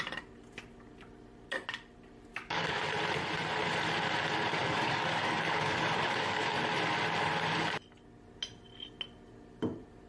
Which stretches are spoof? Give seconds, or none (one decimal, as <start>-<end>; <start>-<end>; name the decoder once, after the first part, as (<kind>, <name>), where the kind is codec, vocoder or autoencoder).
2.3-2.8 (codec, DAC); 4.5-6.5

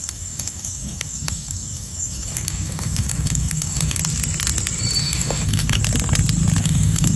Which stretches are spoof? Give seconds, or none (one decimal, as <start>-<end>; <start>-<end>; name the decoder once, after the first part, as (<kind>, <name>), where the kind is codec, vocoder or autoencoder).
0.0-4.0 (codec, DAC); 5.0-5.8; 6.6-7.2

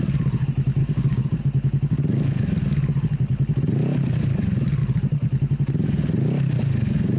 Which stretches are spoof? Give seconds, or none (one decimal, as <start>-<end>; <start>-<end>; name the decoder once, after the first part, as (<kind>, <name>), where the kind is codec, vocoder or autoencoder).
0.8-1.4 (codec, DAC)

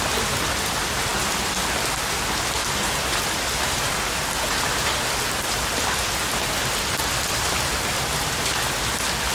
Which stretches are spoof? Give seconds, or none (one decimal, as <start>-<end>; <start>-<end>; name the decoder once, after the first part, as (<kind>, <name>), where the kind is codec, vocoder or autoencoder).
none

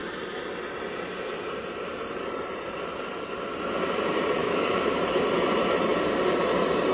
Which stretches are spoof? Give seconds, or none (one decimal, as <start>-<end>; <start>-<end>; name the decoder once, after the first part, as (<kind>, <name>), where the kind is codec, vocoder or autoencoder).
4.4-5.0 (codec, DAC)